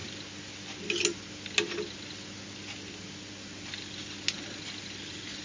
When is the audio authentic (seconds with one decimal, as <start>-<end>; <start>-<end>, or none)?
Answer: 0.0-5.4